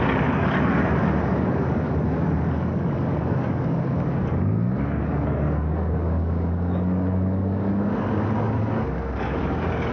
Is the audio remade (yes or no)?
yes